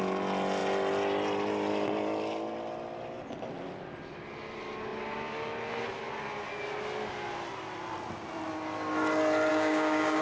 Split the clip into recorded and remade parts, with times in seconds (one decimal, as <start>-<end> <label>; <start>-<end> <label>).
0.0-9.5 recorded; 9.5-10.2 remade